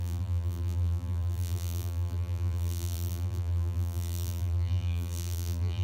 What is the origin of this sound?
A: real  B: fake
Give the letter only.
B